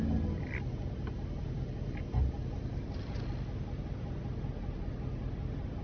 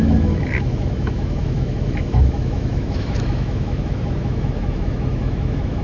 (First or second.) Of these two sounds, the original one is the first